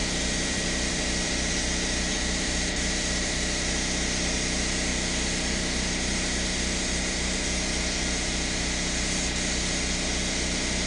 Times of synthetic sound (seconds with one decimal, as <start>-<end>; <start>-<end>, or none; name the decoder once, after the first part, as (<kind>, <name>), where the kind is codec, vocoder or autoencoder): 0.0-2.7 (vocoder, BigVGAN v2)